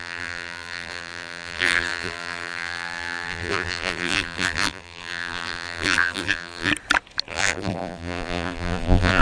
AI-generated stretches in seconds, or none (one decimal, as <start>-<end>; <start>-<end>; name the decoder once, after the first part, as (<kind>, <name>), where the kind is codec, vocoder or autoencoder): 0.0-6.7 (vocoder, BigVGAN v2); 7.3-9.2